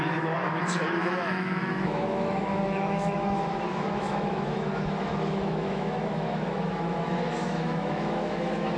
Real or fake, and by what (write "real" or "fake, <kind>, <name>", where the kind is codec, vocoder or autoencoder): fake, autoencoder, DAC-VAE